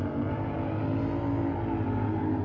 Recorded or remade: recorded